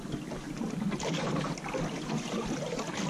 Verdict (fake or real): real